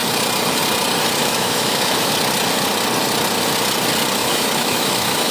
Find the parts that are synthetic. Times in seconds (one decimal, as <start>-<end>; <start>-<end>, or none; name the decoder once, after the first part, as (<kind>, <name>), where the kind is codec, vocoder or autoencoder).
1.2-2.1 (autoencoder, DAC-VAE); 4.2-5.3